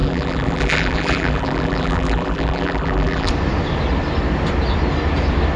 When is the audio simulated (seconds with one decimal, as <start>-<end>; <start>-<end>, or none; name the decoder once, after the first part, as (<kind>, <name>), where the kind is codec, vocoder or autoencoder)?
0.0-3.3 (vocoder, BigVGAN v2)